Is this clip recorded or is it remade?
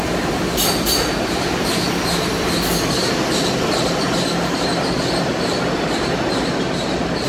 recorded